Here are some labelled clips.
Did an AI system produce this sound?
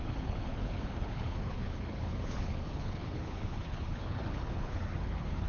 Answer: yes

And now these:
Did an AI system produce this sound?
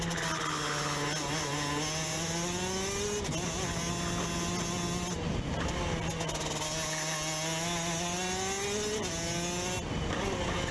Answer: no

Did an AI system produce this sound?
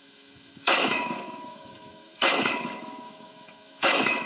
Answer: yes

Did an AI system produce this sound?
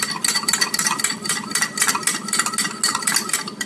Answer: no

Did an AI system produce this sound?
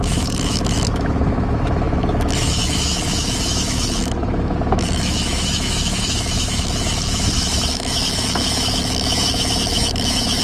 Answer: yes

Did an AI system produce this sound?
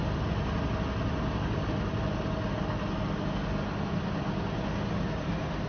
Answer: no